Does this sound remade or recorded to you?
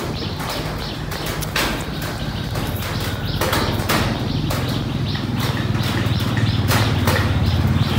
recorded